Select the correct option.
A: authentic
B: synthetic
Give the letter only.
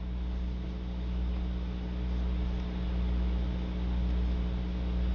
A